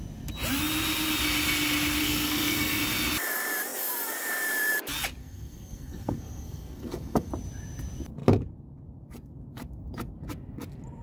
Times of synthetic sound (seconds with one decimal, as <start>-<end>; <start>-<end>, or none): 2.0-2.8; 5.2-7.3